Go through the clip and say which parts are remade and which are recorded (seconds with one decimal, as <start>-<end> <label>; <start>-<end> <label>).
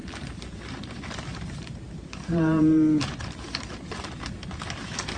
0.0-1.3 recorded; 1.3-3.9 remade; 3.9-5.2 recorded